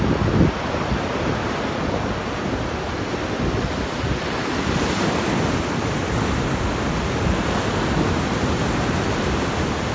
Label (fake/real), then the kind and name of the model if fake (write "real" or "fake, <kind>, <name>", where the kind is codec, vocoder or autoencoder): real